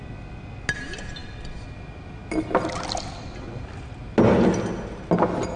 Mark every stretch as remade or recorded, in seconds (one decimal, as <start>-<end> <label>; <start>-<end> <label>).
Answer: 0.0-5.6 recorded